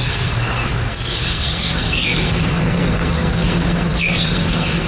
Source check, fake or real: fake